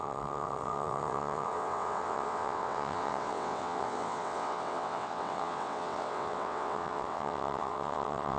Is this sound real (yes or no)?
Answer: no